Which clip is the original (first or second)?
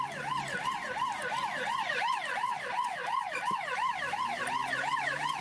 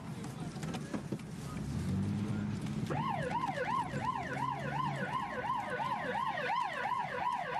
second